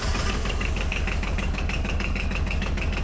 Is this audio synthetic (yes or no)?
yes